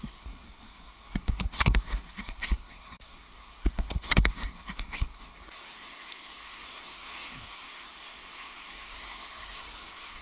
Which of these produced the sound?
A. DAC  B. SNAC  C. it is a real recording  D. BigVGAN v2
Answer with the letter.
B